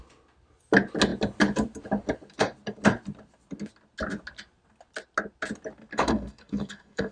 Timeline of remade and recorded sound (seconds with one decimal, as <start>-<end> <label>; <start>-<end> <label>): 0.0-5.9 recorded; 5.9-7.1 remade